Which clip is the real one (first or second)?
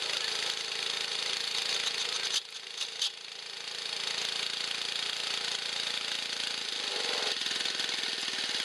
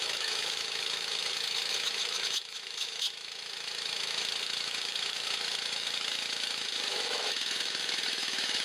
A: first